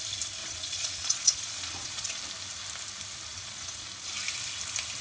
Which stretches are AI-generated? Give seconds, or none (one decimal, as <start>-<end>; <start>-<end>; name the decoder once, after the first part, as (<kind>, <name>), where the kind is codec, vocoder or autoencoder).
0.4-2.2 (vocoder, Vocos); 3.3-3.9